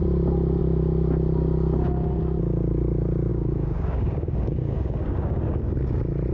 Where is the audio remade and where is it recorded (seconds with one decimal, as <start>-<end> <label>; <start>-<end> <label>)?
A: 0.0-3.3 recorded; 3.3-5.6 remade; 5.6-6.3 recorded